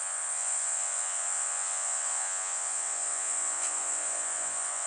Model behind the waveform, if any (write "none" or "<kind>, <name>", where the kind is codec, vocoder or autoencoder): vocoder, Vocos